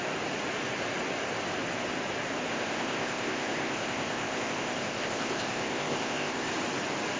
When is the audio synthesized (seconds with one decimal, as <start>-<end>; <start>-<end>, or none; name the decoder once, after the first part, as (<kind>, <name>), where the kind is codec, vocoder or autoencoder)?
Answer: 2.5-6.5 (codec, ZipCodec)